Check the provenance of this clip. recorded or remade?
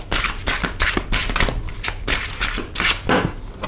recorded